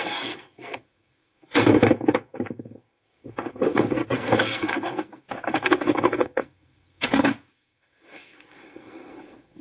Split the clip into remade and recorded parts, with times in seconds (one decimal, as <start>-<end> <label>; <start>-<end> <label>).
0.0-9.6 remade